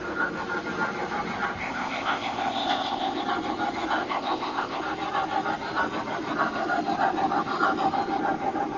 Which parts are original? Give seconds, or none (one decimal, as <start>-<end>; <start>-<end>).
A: 0.0-1.6; 3.2-4.0; 4.8-8.8